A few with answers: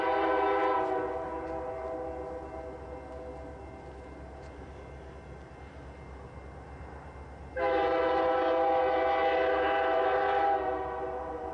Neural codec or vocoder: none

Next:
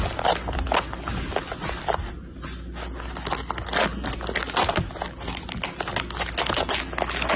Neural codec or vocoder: none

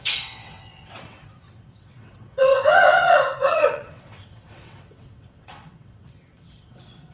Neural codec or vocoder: vocoder, WaveNeXt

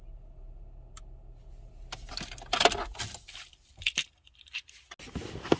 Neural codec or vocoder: none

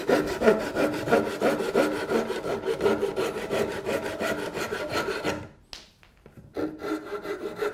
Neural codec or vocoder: none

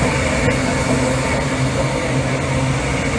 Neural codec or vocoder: none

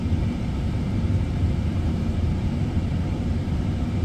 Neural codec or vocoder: vocoder, BigVGAN v2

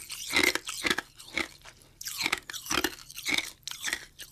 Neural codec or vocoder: none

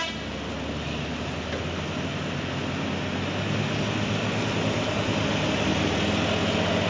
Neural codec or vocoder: none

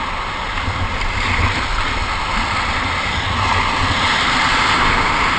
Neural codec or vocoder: none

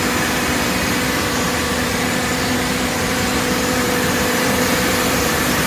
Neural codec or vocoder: vocoder, BigVGAN v2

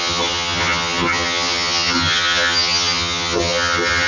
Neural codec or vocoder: vocoder, HiFi-GAN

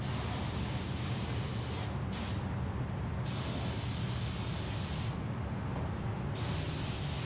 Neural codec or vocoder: none